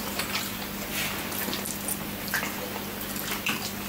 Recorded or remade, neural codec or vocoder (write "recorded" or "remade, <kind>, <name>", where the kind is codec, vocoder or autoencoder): recorded